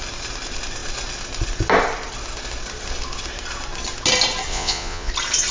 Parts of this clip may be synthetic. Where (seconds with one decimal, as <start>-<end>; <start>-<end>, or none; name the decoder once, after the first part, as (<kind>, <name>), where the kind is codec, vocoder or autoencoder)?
4.5-5.1 (vocoder, Vocos)